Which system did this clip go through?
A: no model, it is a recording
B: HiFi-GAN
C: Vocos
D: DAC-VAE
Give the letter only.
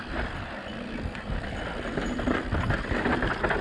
A